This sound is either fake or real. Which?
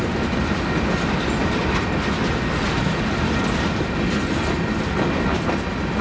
real